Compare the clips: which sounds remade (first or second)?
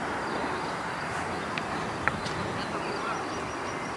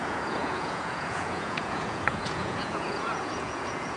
second